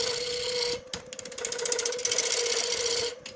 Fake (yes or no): no